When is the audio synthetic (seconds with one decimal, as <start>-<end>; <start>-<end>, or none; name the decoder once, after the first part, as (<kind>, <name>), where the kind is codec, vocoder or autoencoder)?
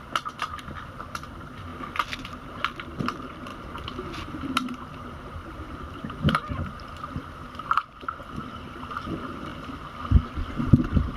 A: 0.0-3.5 (vocoder, BigVGAN v2); 4.1-9.5; 10.6-11.2